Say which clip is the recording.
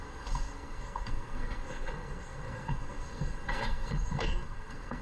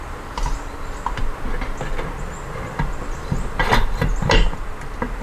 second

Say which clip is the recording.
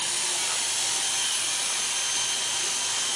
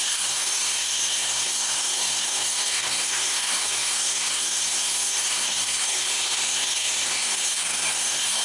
first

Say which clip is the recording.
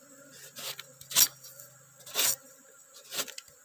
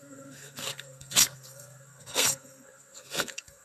first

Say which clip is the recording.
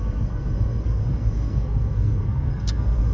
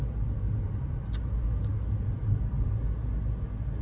second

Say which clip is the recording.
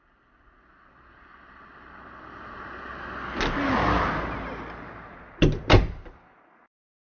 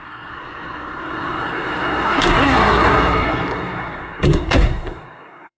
first